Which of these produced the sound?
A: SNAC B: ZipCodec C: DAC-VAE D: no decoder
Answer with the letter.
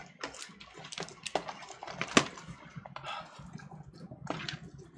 D